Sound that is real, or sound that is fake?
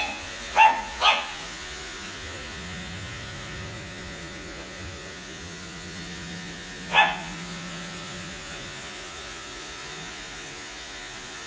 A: fake